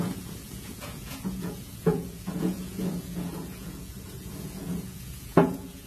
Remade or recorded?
remade